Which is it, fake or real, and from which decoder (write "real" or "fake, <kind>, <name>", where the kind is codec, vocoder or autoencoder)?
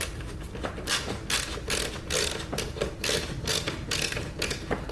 real